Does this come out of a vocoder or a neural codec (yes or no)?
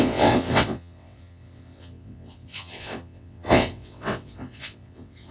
yes